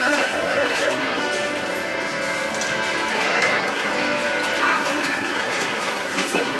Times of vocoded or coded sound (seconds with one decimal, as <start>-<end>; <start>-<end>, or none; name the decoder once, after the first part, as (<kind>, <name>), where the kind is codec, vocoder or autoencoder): 0.0-1.2 (codec, SNAC); 3.1-3.9; 4.6-6.6